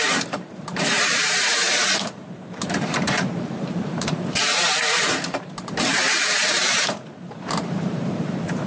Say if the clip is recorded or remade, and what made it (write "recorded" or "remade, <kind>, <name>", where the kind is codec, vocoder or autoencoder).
remade, vocoder, BigVGAN v2